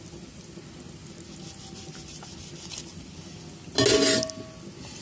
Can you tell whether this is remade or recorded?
recorded